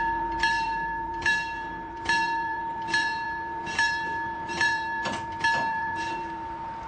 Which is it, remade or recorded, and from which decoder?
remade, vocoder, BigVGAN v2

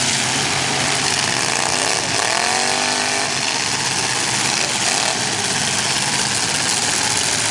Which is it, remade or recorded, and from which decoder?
recorded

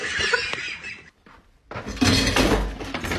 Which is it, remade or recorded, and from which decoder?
recorded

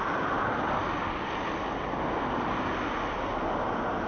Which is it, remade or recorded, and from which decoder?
recorded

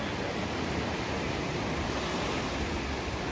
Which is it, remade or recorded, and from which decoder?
recorded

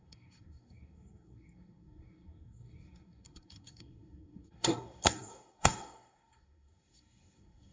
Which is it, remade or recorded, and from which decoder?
remade, codec, SNAC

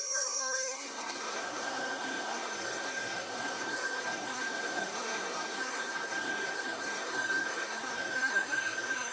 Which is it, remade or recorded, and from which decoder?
remade, codec, SNAC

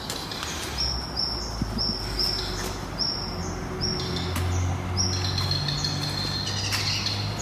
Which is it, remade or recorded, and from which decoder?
recorded